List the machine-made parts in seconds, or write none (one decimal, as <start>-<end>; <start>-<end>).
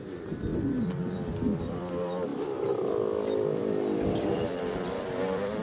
0.0-0.5; 1.6-2.3; 2.9-3.6; 4.6-5.6